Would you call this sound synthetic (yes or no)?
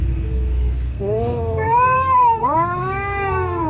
yes